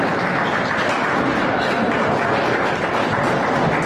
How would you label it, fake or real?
real